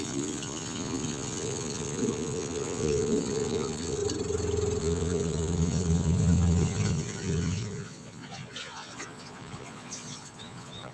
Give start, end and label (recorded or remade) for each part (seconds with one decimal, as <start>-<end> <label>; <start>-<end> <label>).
0.0-4.0 remade; 4.0-4.8 recorded; 4.8-10.9 remade